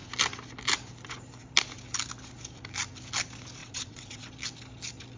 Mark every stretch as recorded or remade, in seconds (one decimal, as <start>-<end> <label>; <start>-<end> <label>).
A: 0.0-3.6 recorded; 3.6-4.3 remade; 4.3-5.2 recorded